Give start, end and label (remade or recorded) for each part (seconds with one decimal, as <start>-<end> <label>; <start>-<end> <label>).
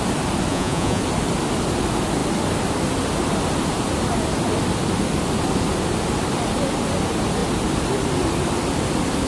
0.0-0.5 recorded; 0.5-1.0 remade; 1.0-9.3 recorded